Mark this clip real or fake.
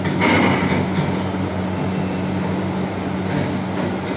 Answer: real